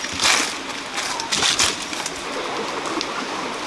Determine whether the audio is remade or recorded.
recorded